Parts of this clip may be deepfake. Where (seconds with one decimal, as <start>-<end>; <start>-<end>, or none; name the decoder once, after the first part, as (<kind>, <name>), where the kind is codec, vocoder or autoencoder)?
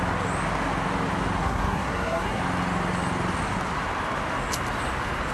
1.4-2.4 (codec, SNAC)